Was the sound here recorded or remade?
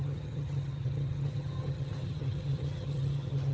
remade